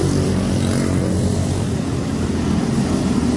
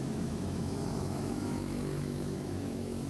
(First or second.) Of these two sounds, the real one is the first